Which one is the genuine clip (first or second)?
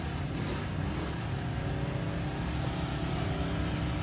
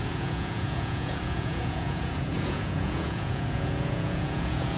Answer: first